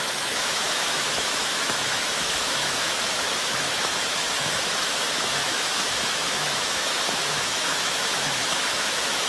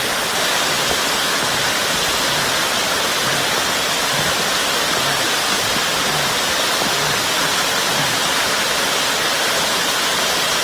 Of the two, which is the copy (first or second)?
first